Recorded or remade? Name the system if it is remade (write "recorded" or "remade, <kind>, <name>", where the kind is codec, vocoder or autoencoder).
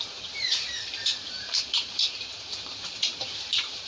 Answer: remade, vocoder, BigVGAN v2